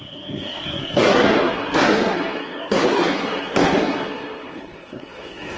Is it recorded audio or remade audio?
remade